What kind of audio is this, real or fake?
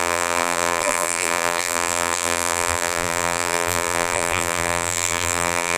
fake